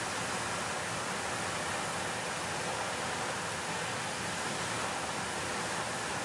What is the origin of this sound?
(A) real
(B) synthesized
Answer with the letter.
A